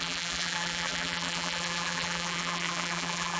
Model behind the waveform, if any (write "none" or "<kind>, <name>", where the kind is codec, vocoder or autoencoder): vocoder, BigVGAN v2